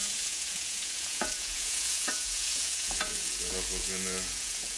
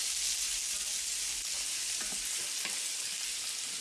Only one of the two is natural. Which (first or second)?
second